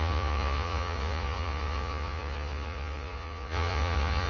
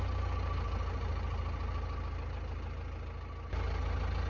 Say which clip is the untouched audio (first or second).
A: second